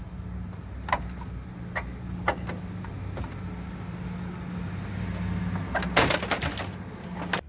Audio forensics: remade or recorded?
recorded